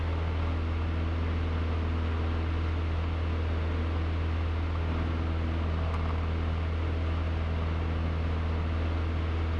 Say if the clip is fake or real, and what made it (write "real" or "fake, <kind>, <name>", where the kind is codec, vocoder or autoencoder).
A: real